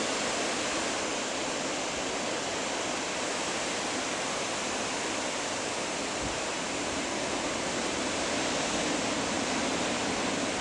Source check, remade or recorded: recorded